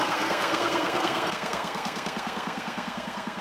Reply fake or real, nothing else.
fake